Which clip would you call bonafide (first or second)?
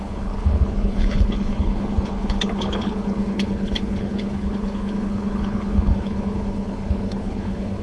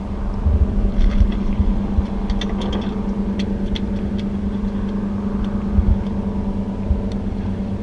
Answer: second